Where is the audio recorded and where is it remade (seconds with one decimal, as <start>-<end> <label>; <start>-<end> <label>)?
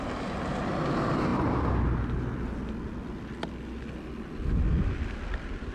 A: 0.0-5.7 recorded